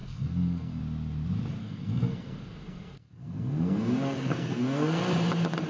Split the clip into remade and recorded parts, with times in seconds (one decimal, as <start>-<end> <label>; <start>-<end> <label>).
0.0-0.8 remade; 0.8-1.6 recorded; 1.6-5.0 remade; 5.0-5.7 recorded